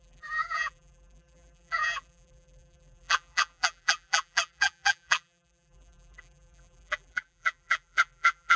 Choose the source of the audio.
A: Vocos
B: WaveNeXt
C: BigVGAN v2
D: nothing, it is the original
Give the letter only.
C